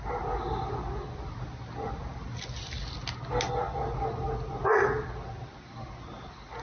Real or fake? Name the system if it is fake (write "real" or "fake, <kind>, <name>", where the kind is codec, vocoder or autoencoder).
real